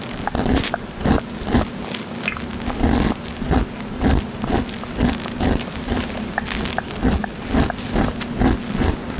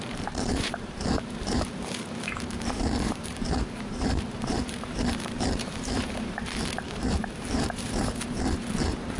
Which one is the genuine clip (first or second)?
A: first